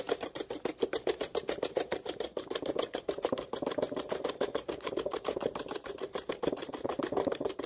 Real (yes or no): no